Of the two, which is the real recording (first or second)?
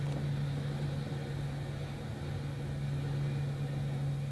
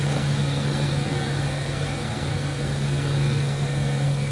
first